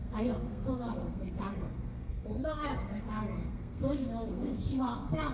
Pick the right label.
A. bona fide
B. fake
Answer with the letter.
B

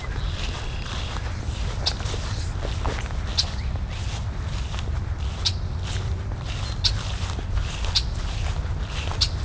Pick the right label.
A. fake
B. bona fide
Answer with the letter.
B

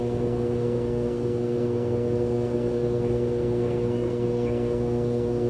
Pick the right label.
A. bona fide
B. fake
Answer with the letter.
B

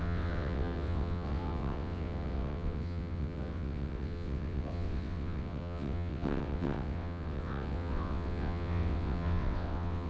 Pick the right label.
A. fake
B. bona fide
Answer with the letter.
A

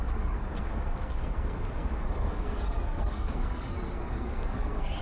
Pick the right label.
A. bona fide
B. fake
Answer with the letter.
B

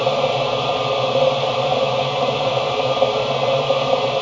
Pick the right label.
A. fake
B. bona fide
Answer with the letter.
B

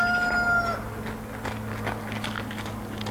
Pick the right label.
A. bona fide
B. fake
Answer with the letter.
A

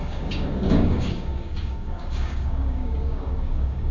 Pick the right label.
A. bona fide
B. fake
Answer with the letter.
B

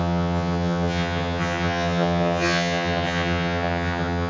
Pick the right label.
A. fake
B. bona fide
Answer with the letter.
A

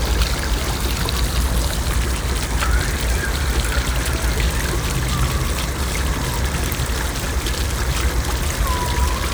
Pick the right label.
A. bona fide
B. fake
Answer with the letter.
A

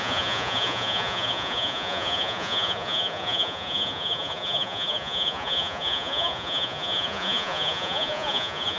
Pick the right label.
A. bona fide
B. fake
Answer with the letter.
B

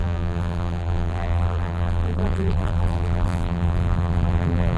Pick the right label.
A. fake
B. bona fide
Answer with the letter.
A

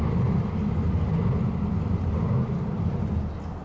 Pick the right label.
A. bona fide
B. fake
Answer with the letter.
A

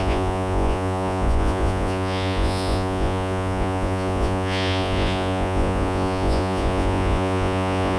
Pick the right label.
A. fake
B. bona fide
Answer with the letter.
A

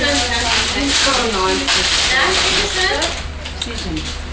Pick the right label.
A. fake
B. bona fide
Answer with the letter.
B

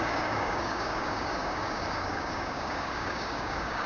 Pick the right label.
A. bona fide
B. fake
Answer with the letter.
B